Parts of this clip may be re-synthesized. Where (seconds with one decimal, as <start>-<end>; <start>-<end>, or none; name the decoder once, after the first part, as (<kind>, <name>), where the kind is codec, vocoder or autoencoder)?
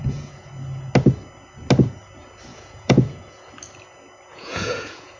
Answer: 0.0-0.5 (vocoder, Vocos); 2.5-3.5; 4.3-5.2